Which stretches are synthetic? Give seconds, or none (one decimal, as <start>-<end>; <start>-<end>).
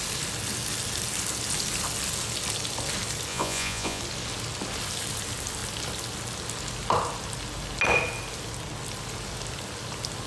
3.3-4.0